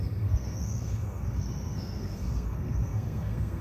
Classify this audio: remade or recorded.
remade